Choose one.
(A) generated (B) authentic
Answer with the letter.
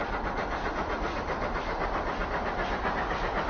B